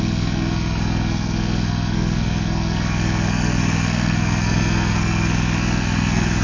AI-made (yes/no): yes